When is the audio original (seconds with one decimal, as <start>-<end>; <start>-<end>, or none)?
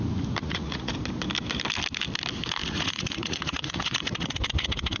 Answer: 0.0-0.4; 0.9-2.6